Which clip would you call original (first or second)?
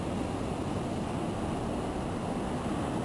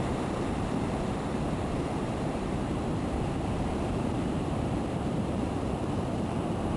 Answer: first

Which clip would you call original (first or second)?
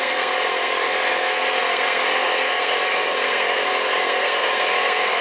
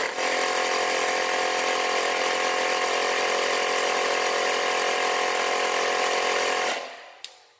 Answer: second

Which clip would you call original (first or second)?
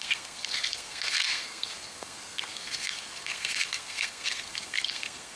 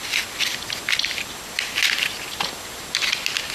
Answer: second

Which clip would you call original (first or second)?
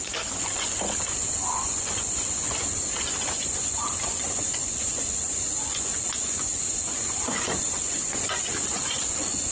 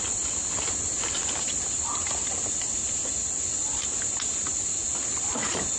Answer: second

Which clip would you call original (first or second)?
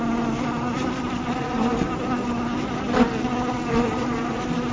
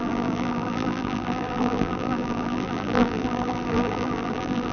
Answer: first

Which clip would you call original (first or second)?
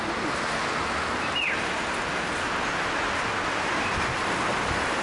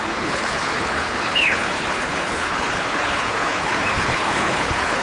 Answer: first